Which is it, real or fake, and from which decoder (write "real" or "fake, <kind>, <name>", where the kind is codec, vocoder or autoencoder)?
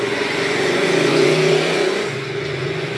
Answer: fake, vocoder, Vocos